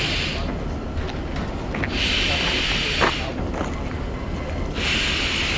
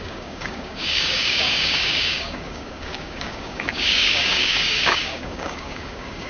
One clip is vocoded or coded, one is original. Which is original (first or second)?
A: first